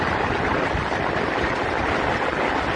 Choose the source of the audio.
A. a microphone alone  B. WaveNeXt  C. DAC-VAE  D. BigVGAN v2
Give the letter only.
A